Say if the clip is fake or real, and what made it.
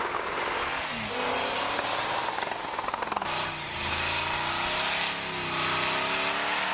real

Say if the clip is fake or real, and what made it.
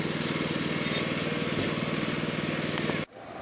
real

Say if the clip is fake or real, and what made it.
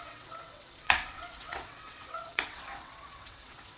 fake, vocoder, WaveNeXt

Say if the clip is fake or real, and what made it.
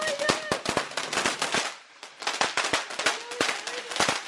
real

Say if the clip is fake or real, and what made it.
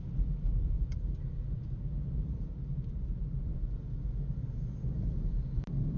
real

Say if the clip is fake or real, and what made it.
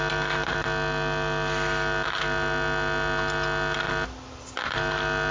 real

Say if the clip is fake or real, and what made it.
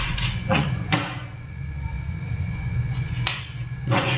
fake, vocoder, Vocos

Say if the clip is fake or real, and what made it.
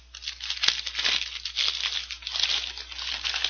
real